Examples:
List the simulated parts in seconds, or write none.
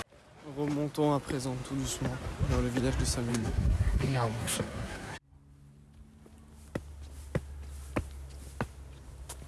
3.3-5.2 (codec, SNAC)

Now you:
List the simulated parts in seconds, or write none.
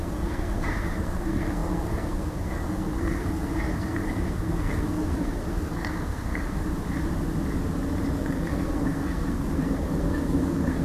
0.0-6.7 (codec, SNAC); 8.1-10.8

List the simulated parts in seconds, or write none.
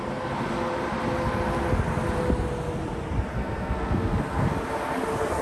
3.3-4.5 (codec, SNAC)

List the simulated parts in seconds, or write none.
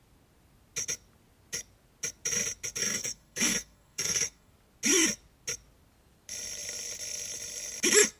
2.8-4.5 (codec, SNAC)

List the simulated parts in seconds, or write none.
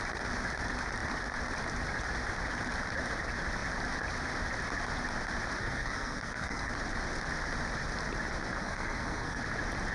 5.6-6.7 (codec, SNAC); 8.6-9.4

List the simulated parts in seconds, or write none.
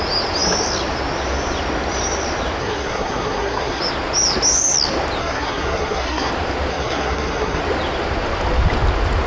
2.6-3.8 (codec, SNAC); 5.2-6.3; 6.7-7.6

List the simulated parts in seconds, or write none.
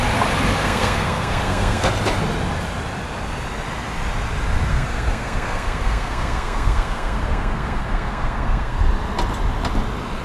0.6-1.9 (codec, SNAC); 4.7-8.8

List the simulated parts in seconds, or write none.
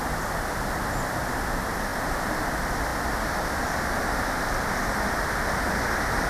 none